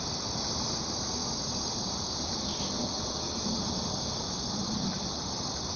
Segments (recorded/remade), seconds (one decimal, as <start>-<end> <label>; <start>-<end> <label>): 0.0-5.8 recorded